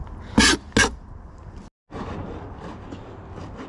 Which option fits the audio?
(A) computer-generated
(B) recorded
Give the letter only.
B